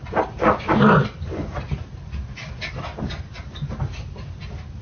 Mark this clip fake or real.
real